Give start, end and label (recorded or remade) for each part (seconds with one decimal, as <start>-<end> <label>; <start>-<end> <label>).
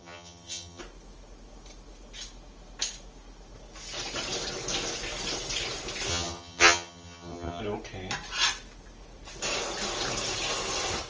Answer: 0.0-0.8 remade; 0.8-6.1 recorded; 6.1-7.6 remade; 7.6-11.1 recorded